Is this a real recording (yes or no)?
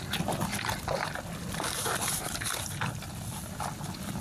yes